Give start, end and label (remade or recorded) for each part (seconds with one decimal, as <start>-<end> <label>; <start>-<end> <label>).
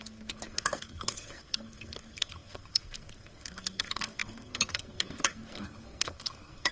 0.0-6.7 remade